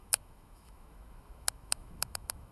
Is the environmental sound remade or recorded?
remade